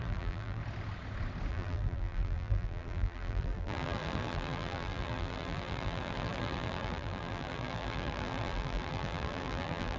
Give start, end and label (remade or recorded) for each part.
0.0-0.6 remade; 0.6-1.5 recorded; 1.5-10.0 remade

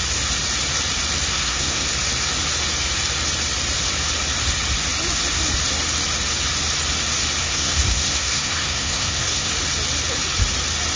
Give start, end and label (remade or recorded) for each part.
0.0-1.3 recorded; 1.3-1.9 remade; 1.9-7.4 recorded; 7.4-9.5 remade; 9.5-11.0 recorded

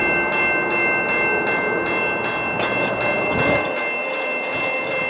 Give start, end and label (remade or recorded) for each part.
0.0-5.1 recorded

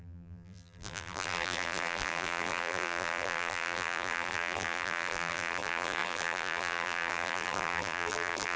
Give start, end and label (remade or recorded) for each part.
0.0-8.6 remade